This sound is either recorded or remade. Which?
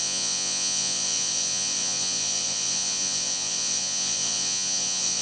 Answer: remade